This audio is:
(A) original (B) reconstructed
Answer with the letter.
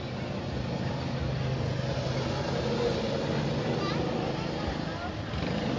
A